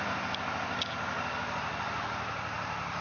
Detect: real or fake real